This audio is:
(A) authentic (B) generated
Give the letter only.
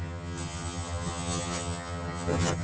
B